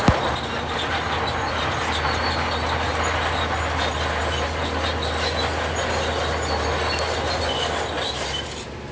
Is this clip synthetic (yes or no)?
no